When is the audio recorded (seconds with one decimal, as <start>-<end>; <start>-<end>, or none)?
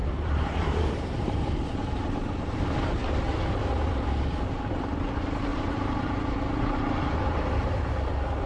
1.5-5.5; 7.7-8.5